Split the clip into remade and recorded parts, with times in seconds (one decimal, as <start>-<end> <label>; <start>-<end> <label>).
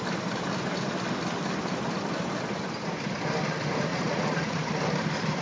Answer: 0.0-3.9 recorded; 3.9-4.7 remade; 4.7-5.4 recorded